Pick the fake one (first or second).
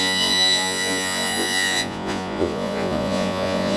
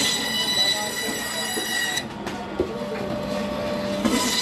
first